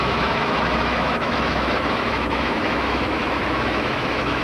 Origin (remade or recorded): remade